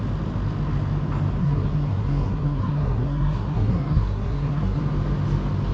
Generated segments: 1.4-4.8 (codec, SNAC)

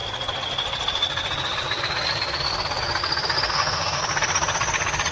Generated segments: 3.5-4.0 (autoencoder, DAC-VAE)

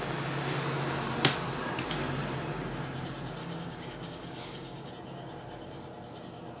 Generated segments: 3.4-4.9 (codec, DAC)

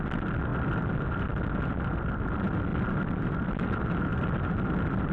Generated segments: 0.5-1.0 (vocoder, BigVGAN v2); 2.7-5.1